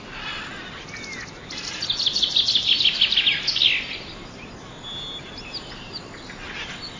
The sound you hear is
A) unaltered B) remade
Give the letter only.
A